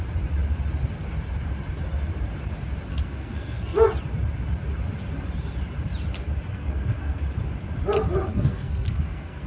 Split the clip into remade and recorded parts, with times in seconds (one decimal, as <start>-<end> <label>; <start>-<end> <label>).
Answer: 0.0-2.9 recorded; 2.9-3.9 remade; 3.9-6.5 recorded; 6.5-7.2 remade; 7.2-8.3 recorded; 8.3-9.5 remade